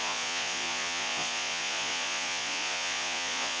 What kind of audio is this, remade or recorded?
remade